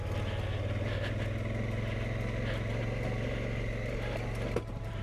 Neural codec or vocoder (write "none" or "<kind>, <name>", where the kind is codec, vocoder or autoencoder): none